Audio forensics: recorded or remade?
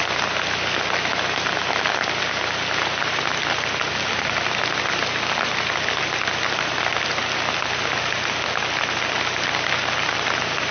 recorded